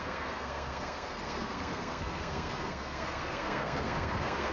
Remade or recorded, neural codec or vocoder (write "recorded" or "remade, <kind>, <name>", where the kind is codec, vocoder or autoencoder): remade, codec, SNAC